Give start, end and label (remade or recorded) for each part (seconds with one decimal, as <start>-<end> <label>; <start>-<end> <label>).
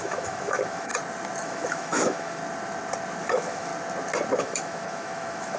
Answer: 0.0-0.9 remade; 0.9-1.4 recorded; 1.4-2.4 remade; 2.4-3.2 recorded; 3.2-3.7 remade; 3.7-4.4 recorded; 4.4-5.6 remade